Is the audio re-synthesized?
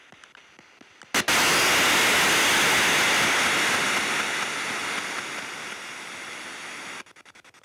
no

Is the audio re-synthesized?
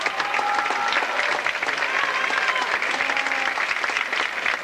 no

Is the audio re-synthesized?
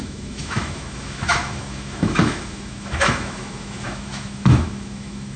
yes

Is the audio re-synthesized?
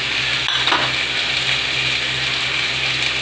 no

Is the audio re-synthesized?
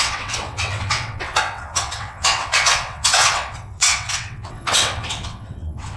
yes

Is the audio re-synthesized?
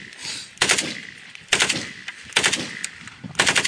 no